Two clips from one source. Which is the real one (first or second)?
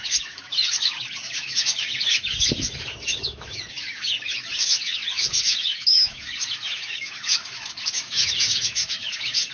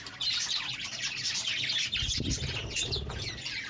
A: second